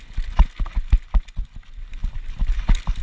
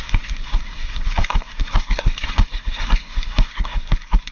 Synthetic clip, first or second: second